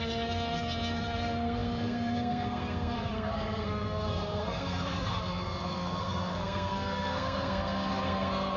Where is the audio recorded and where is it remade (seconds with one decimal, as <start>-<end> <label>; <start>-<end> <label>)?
0.0-8.6 remade